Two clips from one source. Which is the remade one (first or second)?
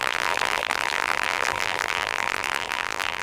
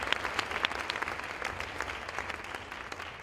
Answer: first